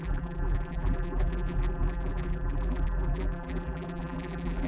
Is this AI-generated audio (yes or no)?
yes